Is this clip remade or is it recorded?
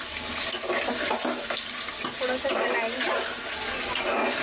recorded